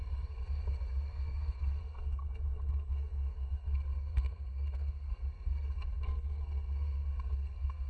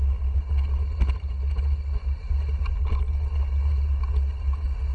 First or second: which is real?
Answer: second